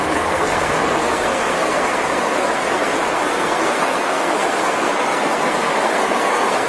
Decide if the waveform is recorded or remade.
remade